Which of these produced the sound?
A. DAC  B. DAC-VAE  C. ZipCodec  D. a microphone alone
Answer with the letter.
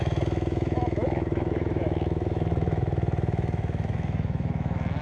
B